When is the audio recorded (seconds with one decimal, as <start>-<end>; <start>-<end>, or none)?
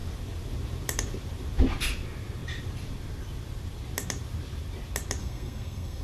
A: 0.0-5.2